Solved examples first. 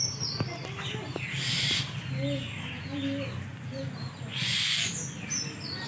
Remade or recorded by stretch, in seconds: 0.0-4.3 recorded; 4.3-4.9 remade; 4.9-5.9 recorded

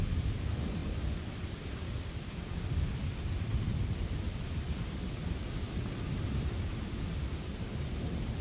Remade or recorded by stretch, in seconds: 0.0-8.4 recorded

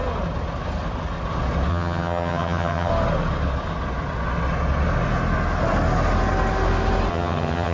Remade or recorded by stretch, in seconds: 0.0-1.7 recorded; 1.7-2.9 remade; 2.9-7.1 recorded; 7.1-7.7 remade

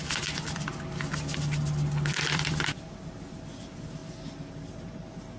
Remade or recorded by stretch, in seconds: 0.0-3.2 remade; 3.2-4.0 recorded; 4.0-4.7 remade; 4.7-5.4 recorded